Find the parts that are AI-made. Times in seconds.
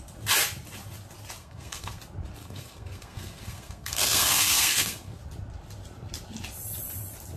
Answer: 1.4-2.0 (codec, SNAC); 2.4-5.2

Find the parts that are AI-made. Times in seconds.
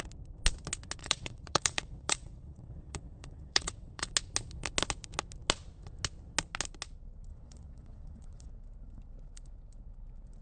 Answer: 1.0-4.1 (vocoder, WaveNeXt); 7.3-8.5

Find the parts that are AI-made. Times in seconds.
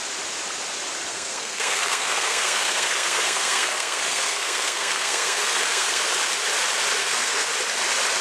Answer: 1.1-6.0 (codec, SNAC); 7.0-7.5